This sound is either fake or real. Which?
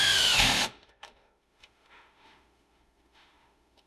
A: fake